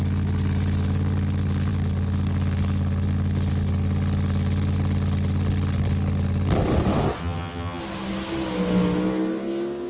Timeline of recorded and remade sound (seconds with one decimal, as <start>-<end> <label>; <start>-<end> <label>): 0.0-7.2 recorded; 7.2-7.8 remade; 7.8-9.9 recorded